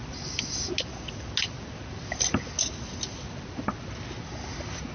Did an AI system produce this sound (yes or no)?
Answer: no